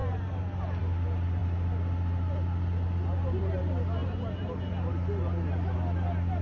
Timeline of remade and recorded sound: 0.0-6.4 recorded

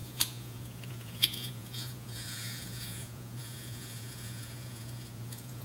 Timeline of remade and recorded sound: 0.0-5.6 remade

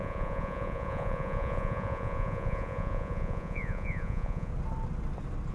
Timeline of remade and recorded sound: 0.0-4.5 remade; 4.5-5.5 recorded

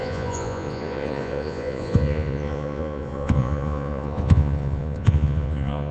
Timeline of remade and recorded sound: 0.0-5.9 remade

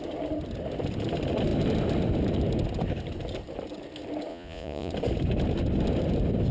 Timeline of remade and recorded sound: 0.0-4.3 recorded; 4.3-4.9 remade; 4.9-6.5 recorded